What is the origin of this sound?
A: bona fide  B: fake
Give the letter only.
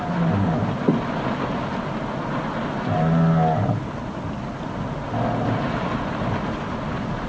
A